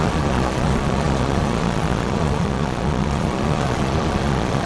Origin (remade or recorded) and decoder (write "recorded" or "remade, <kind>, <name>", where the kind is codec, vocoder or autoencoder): remade, vocoder, Vocos